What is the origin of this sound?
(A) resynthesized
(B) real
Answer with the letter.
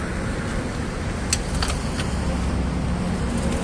B